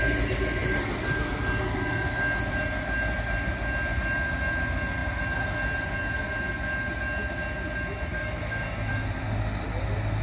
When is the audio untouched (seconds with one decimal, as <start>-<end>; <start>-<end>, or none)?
0.0-8.1; 8.9-10.2